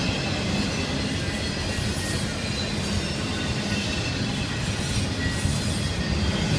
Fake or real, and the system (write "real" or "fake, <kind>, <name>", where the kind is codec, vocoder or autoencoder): real